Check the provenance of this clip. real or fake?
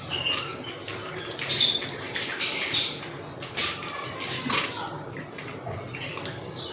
fake